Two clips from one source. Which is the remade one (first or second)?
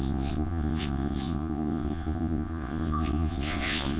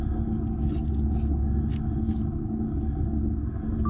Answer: first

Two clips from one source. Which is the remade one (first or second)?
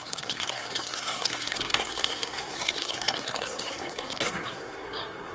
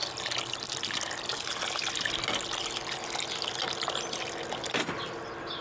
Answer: first